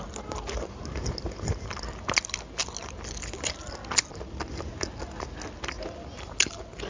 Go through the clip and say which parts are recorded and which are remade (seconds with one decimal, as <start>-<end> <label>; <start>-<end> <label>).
0.0-6.9 recorded